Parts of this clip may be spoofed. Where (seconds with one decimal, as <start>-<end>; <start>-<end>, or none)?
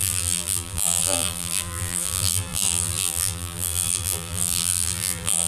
0.0-5.5